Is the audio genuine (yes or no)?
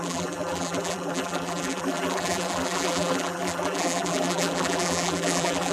no